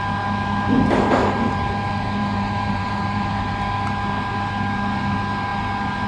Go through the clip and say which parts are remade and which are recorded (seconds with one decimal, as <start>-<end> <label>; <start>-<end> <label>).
0.0-2.2 recorded; 2.2-3.4 remade; 3.4-6.1 recorded